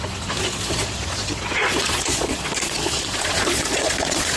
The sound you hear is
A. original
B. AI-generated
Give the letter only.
B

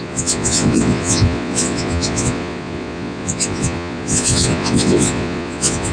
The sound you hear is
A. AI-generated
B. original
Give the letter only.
A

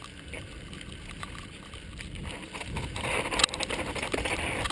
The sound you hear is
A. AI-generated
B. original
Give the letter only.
B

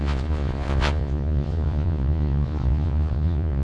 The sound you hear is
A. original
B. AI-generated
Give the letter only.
B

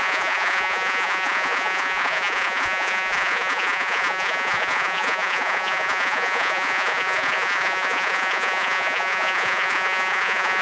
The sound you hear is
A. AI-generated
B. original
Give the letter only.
A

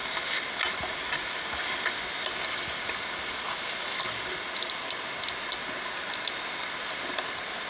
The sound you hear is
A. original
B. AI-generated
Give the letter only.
A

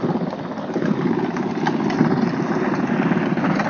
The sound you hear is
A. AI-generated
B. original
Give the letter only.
B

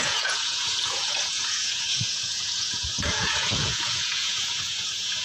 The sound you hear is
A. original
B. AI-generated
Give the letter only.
B